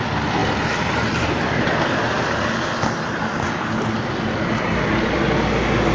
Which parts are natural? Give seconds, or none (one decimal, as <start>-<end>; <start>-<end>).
0.0-5.9